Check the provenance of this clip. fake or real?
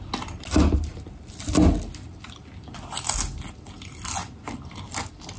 real